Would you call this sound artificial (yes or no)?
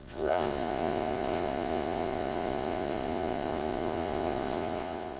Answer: yes